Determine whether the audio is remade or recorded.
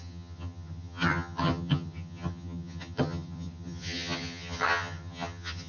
remade